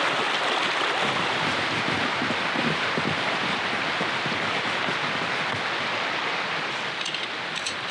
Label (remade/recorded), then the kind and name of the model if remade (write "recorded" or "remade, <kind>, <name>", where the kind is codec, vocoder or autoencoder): recorded